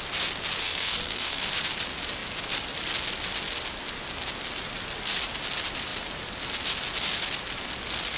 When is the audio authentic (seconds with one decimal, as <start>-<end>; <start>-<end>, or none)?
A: 0.0-0.6; 1.4-8.2